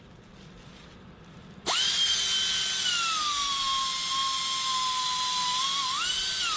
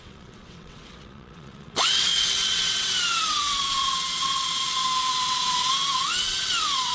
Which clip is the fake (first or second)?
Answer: second